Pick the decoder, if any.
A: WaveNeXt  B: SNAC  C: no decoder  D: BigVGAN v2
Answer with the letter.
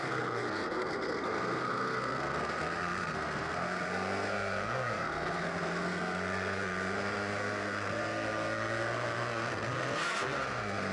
B